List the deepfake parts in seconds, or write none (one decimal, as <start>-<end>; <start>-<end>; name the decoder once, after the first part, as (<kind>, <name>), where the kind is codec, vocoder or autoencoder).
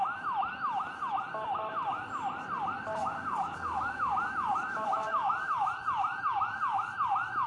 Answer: 3.0-4.1 (codec, DAC); 4.5-5.3